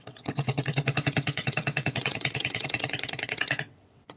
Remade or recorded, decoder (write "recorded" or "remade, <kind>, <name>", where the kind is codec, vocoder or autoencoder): remade, vocoder, WaveNeXt